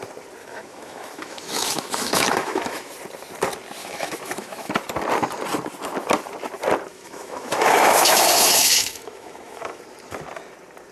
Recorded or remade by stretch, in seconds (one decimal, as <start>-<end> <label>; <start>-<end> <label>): 0.0-0.4 recorded; 0.4-2.9 remade; 2.9-3.8 recorded; 3.8-4.7 remade; 4.7-6.9 recorded; 6.9-9.8 remade; 9.8-10.9 recorded